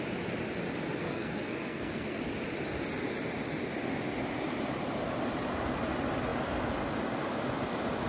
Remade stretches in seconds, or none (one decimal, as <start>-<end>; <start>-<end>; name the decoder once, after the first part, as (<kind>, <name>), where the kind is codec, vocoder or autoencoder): 1.0-2.2 (codec, SNAC)